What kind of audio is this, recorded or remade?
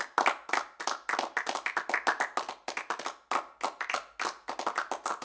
recorded